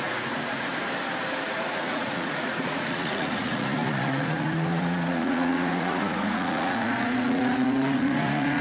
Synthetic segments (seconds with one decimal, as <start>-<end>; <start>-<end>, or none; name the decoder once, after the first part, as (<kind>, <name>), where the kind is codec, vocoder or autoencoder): 0.0-0.7 (vocoder, Vocos); 1.5-8.6